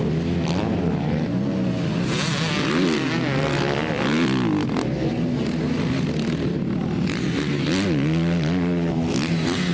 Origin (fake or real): real